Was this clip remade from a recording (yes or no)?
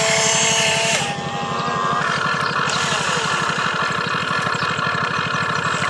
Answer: no